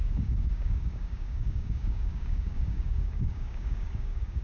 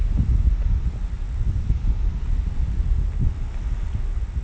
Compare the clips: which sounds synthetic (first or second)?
first